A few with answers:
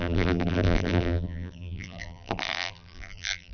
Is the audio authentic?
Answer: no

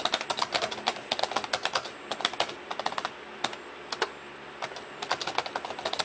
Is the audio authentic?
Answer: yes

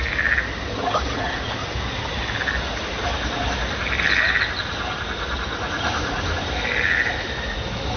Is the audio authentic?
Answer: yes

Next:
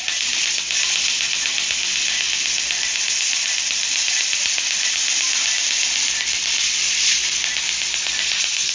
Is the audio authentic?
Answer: yes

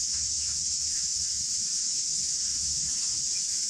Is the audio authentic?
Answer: no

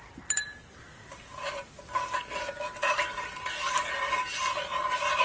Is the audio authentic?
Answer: yes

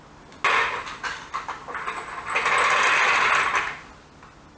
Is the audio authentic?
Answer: yes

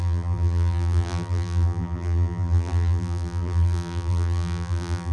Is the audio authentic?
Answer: no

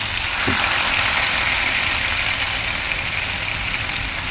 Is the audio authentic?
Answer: yes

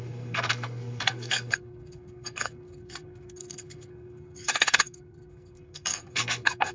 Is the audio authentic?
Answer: no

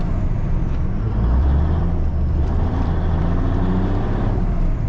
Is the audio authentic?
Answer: no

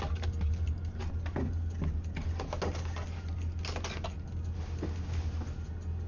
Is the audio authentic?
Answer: yes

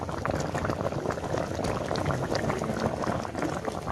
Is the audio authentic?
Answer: yes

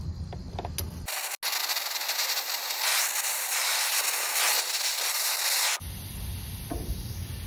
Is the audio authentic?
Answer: yes